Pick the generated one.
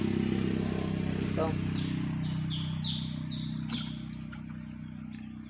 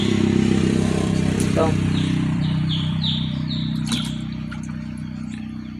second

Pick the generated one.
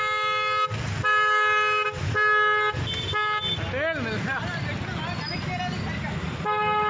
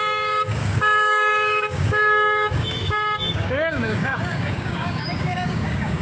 second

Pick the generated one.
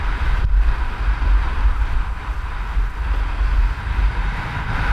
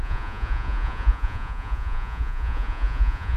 second